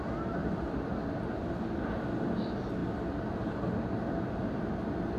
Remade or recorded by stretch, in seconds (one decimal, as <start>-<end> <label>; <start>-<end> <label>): 0.0-0.4 recorded; 0.4-1.5 remade; 1.5-5.2 recorded